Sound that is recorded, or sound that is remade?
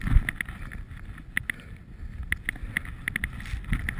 recorded